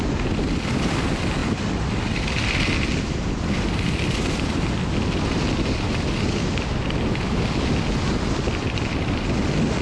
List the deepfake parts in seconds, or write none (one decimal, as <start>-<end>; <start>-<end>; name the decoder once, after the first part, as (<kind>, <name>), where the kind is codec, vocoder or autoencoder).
none